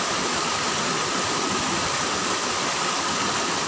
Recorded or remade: recorded